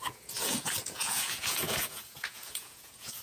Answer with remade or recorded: remade